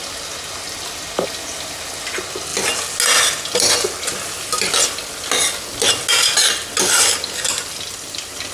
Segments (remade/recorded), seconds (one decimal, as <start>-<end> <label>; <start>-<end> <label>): 0.0-8.5 recorded